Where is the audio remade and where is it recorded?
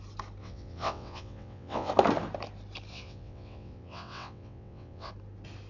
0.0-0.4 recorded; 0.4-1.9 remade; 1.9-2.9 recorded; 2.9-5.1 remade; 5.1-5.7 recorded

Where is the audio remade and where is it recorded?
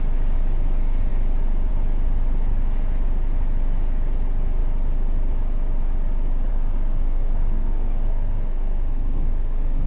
0.0-6.5 recorded; 6.5-9.9 remade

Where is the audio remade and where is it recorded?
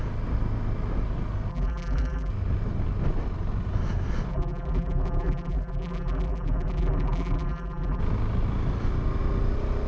0.0-1.5 recorded; 1.5-2.3 remade; 2.3-4.3 recorded; 4.3-8.0 remade; 8.0-9.9 recorded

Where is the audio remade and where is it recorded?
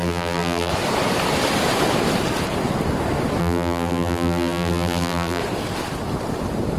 0.0-0.7 remade; 0.7-3.4 recorded; 3.4-5.4 remade; 5.4-6.8 recorded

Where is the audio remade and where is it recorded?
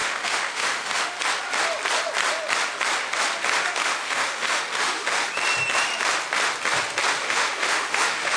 0.0-1.1 remade; 1.1-3.8 recorded; 3.8-5.3 remade; 5.3-7.2 recorded; 7.2-8.4 remade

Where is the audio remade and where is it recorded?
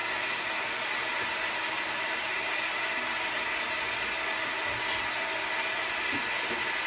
0.0-6.9 recorded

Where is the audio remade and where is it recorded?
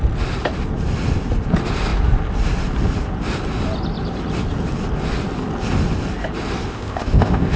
0.0-6.7 recorded; 6.7-7.6 remade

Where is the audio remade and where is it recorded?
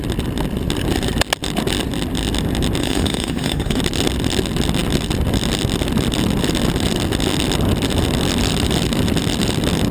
0.0-2.8 recorded; 2.8-3.8 remade; 3.8-9.9 recorded